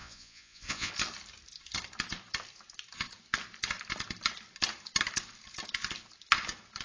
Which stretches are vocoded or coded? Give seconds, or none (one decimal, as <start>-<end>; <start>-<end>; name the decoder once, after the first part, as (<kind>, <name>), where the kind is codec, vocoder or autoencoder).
0.0-0.9 (vocoder, Vocos)